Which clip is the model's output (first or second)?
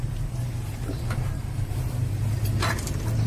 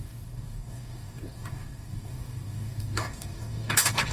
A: second